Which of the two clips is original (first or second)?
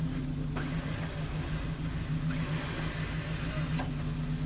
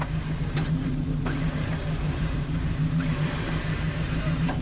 first